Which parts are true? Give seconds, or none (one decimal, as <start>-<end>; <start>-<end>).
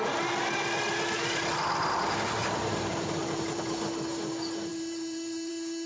0.0-2.4; 3.6-4.7; 5.5-5.9